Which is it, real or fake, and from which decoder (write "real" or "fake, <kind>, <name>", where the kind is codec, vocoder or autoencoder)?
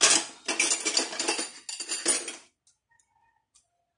real